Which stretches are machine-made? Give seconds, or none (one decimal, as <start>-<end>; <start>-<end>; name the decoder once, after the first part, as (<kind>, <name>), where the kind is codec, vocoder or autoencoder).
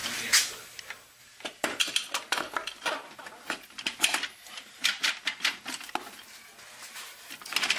1.2-1.8 (vocoder, BigVGAN v2); 2.6-5.9